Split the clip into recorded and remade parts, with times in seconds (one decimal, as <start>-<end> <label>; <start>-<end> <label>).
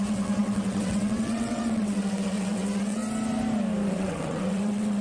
0.0-3.0 remade; 3.0-3.9 recorded; 3.9-5.0 remade